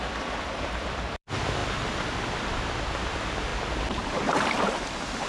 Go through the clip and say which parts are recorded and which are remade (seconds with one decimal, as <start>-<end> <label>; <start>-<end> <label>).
0.0-3.5 remade; 3.5-4.7 recorded; 4.7-5.3 remade